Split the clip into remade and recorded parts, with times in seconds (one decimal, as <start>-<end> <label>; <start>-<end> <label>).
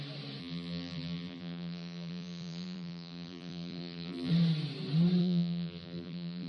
0.0-0.4 recorded; 0.4-4.3 remade; 4.3-5.2 recorded; 5.2-6.5 remade